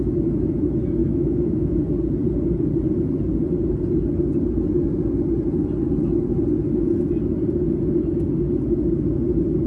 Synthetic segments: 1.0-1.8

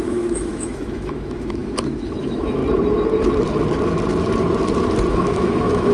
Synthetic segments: 0.0-2.6; 5.1-5.9